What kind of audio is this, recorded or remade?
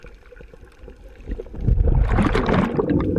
recorded